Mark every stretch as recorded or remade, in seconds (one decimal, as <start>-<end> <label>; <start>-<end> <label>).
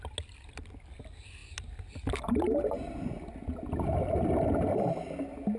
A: 0.0-5.6 recorded